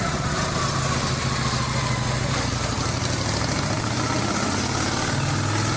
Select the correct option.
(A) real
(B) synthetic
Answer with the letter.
A